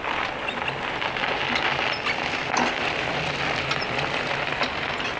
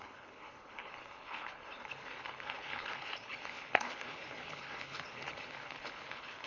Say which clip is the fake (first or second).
second